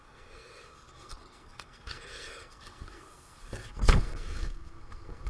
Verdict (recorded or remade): remade